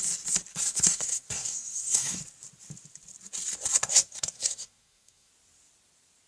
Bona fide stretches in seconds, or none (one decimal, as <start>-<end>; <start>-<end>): 0.0-0.5; 2.2-3.8; 5.3-6.3